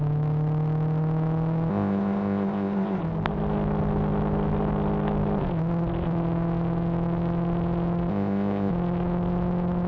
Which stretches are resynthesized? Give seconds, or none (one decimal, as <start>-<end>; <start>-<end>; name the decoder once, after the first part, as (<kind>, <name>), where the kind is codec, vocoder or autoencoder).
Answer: 1.7-3.0 (codec, ZipCodec); 8.1-8.7